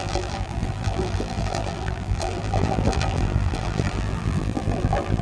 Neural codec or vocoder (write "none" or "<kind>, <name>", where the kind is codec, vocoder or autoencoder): vocoder, BigVGAN v2